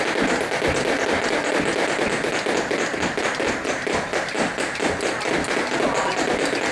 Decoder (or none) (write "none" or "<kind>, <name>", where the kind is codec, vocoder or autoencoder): none